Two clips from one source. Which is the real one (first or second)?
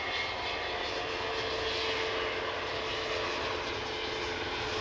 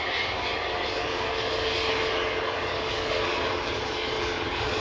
first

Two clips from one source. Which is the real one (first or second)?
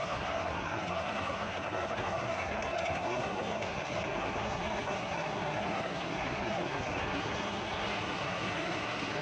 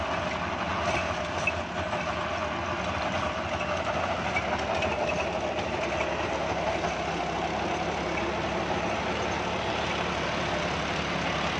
second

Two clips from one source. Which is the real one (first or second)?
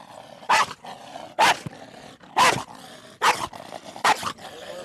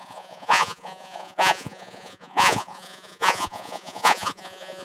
first